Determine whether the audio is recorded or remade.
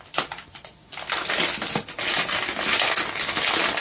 recorded